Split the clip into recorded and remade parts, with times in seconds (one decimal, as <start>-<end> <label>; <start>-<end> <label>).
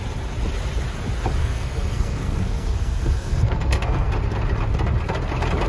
0.0-1.4 recorded; 1.4-4.1 remade; 4.1-5.7 recorded